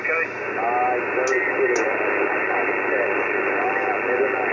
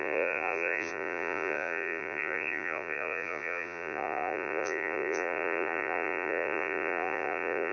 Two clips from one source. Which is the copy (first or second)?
second